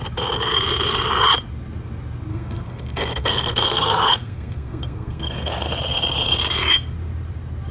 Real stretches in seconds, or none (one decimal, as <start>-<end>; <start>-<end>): 0.0-2.3; 5.7-7.7